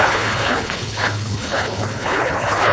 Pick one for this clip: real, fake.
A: fake